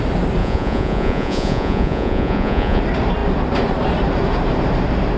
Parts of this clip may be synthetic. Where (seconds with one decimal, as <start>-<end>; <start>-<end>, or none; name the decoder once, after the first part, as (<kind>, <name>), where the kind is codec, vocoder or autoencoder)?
0.4-2.8 (vocoder, Vocos)